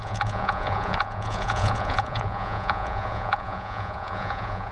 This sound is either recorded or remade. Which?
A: remade